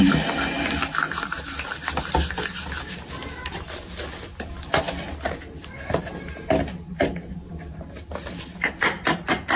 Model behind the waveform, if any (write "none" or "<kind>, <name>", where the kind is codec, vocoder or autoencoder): none